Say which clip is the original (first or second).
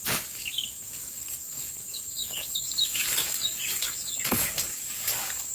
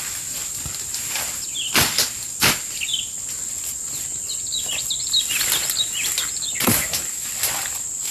second